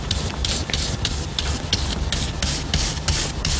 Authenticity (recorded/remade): remade